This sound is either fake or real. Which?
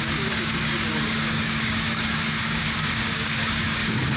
fake